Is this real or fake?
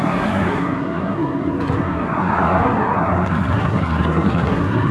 fake